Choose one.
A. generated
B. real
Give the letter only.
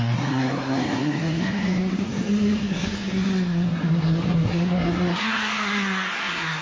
A